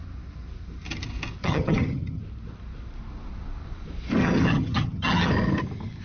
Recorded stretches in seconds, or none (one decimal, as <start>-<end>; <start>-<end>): 0.0-1.4; 2.2-4.2; 5.3-6.0